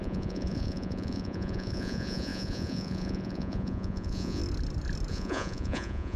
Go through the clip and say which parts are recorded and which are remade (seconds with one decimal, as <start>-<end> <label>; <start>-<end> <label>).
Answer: 0.0-4.4 remade; 4.4-5.1 recorded; 5.1-6.2 remade